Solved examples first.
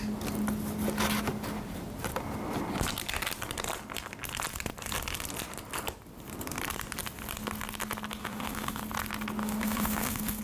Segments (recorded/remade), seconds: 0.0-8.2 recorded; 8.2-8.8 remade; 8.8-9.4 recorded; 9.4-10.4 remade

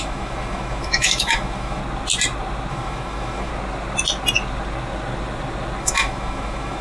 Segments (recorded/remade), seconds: 0.0-1.8 remade; 1.8-2.7 recorded; 2.7-3.5 remade; 3.5-5.8 recorded; 5.8-6.8 remade